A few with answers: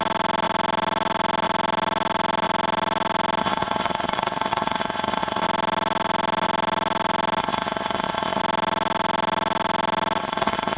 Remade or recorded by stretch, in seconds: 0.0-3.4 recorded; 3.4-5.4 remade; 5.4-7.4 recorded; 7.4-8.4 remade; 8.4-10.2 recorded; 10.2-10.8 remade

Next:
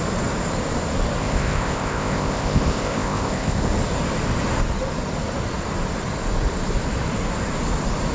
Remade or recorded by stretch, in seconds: 0.0-1.2 recorded; 1.2-3.7 remade; 3.7-8.1 recorded

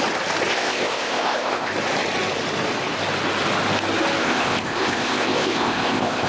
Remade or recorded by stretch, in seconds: 0.0-0.5 recorded; 0.5-1.7 remade; 1.7-4.2 recorded; 4.2-6.3 remade

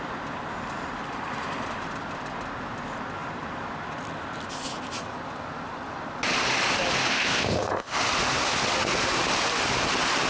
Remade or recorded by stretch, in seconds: 0.0-7.1 recorded; 7.1-8.0 remade; 8.0-10.3 recorded

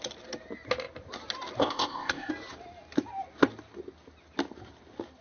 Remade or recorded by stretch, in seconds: 0.0-1.6 recorded; 1.6-2.3 remade; 2.3-5.2 recorded

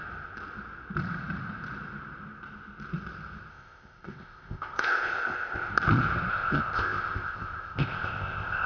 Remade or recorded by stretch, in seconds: 0.0-3.5 recorded; 3.5-5.7 remade; 5.7-6.3 recorded; 6.3-8.7 remade

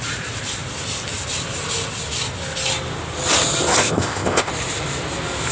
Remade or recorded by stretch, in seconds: 0.0-3.8 recorded; 3.8-4.5 remade; 4.5-5.5 recorded

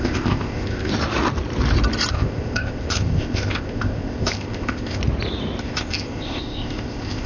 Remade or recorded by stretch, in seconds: 0.0-0.9 remade; 0.9-2.1 recorded; 2.1-5.0 remade; 5.0-5.6 recorded; 5.6-7.3 remade